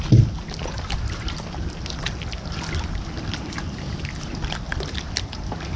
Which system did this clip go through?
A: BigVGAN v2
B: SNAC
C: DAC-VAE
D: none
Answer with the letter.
D